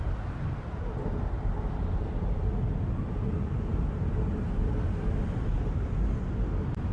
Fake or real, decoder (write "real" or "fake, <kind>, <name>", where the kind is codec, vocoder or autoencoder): real